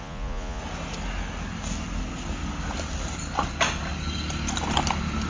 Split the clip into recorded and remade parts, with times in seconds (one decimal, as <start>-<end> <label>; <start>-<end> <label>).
0.0-0.6 remade; 0.6-5.3 recorded